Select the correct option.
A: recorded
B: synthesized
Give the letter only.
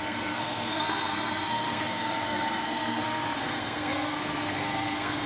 B